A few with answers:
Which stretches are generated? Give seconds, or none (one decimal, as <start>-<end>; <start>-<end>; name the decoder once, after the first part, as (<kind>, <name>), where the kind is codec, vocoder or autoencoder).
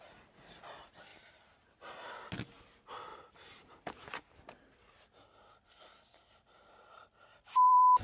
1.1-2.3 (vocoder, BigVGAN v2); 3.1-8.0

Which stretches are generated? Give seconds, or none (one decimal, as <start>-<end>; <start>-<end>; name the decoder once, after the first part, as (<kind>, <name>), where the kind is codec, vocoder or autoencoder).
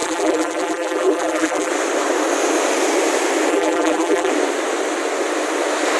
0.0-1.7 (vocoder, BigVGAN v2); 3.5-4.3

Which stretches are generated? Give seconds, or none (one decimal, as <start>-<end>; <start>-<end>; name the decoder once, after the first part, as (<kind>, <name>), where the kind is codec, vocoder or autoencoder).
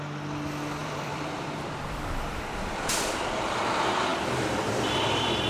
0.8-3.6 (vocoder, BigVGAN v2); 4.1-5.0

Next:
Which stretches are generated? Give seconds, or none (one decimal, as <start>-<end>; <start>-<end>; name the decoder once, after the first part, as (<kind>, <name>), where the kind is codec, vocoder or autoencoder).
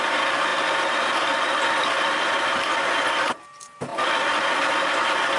3.9-4.8 (vocoder, BigVGAN v2)